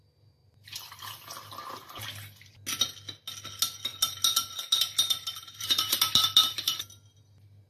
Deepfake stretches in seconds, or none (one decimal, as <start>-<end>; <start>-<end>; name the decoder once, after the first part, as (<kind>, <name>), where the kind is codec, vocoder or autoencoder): 0.4-2.5 (vocoder, BigVGAN v2); 3.9-6.8